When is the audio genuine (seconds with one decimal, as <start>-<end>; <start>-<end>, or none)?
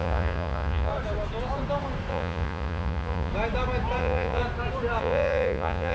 0.9-2.1; 3.3-4.0; 4.4-5.0